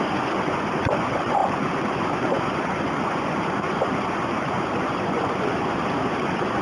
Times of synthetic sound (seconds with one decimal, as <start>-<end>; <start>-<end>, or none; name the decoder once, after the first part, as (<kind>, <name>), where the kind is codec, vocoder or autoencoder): 0.0-6.6 (vocoder, Vocos)